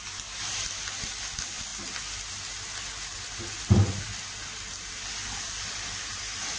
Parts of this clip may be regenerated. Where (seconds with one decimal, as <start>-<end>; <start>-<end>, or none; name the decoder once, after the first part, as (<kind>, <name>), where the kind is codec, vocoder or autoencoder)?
none